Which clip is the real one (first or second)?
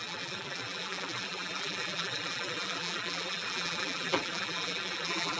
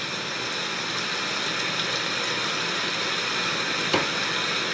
second